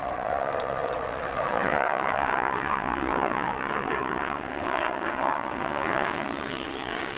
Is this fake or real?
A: fake